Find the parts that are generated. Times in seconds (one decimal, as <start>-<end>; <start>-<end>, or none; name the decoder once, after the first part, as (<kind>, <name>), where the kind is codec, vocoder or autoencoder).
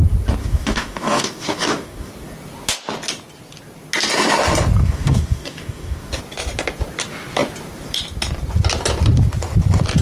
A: 0.4-2.1 (codec, DAC); 4.8-6.2